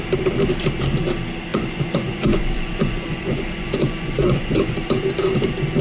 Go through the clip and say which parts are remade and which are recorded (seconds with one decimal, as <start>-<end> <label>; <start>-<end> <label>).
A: 0.0-1.5 recorded; 1.5-5.0 remade; 5.0-5.8 recorded